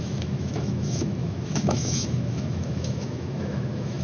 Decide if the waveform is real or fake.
fake